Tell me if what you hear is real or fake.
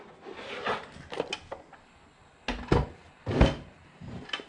real